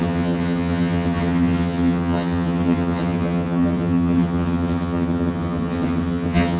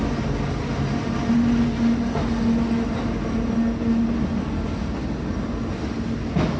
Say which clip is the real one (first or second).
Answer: second